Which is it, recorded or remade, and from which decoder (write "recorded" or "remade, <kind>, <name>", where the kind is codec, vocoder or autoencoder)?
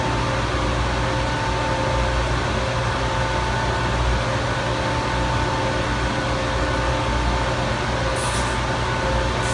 recorded